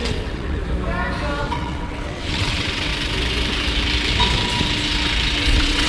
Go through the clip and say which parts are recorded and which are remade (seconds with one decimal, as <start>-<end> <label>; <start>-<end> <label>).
0.0-0.6 remade; 0.6-1.4 recorded; 1.4-2.9 remade; 2.9-5.4 recorded; 5.4-5.9 remade